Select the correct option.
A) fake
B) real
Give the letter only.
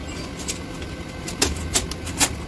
B